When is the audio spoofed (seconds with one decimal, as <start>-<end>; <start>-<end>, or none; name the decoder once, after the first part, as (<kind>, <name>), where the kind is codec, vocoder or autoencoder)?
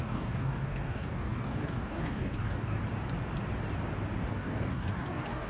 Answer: 0.0-2.8 (codec, DAC); 4.3-5.5